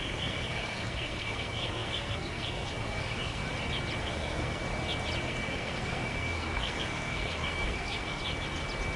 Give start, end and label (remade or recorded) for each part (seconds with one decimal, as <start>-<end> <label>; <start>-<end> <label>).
0.0-3.4 remade; 3.4-4.0 recorded; 4.0-4.6 remade; 4.6-5.2 recorded; 5.2-8.2 remade; 8.2-9.0 recorded

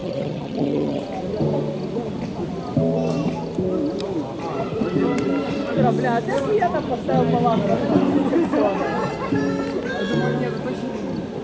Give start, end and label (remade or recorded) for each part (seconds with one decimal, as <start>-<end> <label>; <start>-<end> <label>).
0.0-1.0 remade; 1.0-11.4 recorded

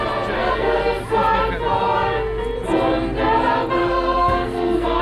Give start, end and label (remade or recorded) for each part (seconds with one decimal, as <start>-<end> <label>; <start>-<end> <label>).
0.0-0.4 recorded; 0.4-1.0 remade; 1.0-3.8 recorded; 3.8-5.0 remade

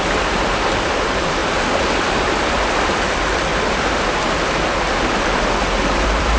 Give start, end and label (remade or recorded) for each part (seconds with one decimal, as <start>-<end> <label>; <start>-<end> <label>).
0.0-1.4 remade; 1.4-2.1 recorded; 2.1-3.5 remade; 3.5-5.0 recorded; 5.0-6.4 remade

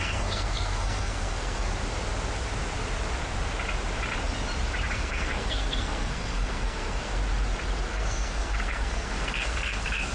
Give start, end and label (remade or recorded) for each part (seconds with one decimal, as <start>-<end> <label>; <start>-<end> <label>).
0.0-1.7 remade; 1.7-4.9 recorded; 4.9-7.2 remade; 7.2-7.9 recorded; 7.9-10.1 remade

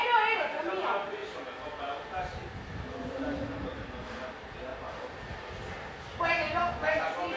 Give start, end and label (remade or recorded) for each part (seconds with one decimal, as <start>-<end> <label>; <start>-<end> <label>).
0.0-7.4 recorded

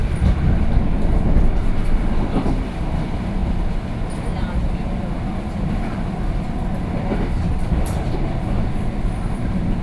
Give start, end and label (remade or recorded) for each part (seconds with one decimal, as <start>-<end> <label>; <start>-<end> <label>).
0.0-3.4 remade; 3.4-5.1 recorded; 5.1-9.8 remade